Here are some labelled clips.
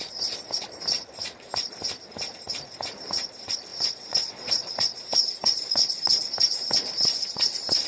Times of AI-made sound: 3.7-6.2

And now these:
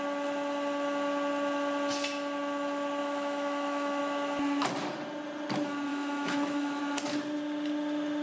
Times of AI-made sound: 3.0-4.0; 5.9-6.8

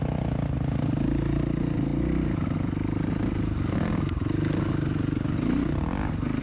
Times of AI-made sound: none

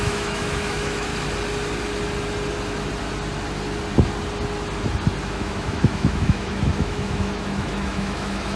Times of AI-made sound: 0.0-1.1; 5.3-8.6